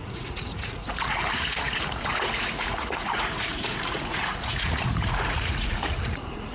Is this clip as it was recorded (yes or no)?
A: no